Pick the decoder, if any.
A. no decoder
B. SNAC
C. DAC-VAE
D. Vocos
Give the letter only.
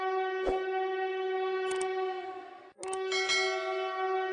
A